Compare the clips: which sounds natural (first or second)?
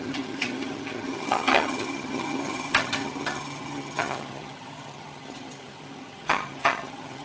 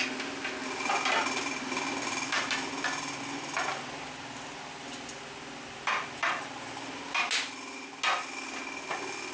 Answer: second